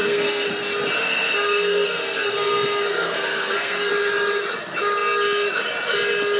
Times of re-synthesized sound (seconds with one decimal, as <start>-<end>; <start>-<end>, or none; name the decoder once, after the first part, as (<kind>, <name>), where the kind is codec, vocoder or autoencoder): 0.0-0.5 (codec, SNAC); 1.0-3.9